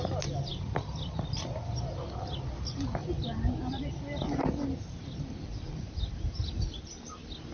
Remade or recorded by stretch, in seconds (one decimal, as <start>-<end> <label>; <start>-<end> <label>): 0.0-5.5 recorded; 5.5-6.8 remade; 6.8-7.5 recorded